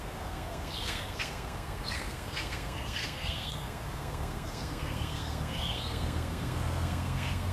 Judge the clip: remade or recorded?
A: remade